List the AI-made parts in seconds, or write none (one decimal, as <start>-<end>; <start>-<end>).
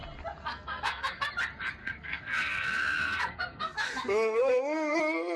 0.4-1.3; 1.8-5.0